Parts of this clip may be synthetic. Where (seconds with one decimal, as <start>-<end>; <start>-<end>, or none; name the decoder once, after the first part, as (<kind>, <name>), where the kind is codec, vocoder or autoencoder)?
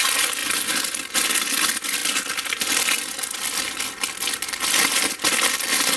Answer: none